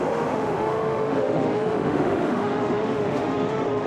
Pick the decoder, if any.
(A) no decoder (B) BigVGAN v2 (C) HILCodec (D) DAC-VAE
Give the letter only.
D